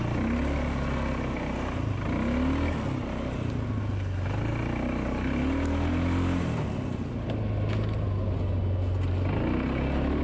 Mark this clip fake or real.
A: real